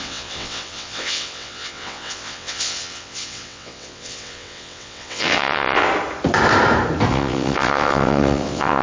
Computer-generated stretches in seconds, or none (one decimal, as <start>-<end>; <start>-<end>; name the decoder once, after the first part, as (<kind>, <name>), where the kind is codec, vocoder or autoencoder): 0.0-5.9 (vocoder, WaveNeXt); 7.1-8.8